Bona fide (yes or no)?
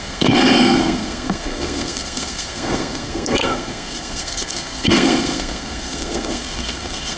no